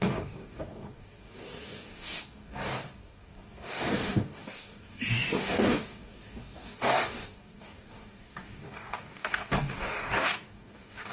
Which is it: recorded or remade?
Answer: remade